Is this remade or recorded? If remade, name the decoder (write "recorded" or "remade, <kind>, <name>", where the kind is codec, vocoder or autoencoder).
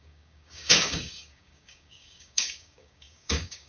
remade, codec, DAC